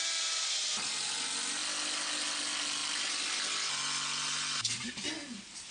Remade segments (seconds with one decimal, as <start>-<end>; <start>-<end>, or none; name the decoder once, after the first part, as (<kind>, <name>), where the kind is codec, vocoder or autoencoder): none